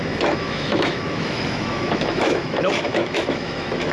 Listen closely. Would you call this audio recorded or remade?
remade